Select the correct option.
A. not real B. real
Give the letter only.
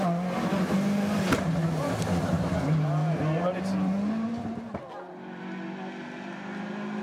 B